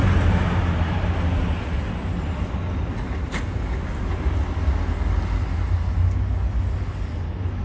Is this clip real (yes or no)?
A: yes